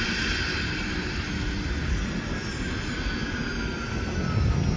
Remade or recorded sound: recorded